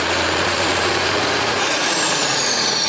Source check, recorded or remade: remade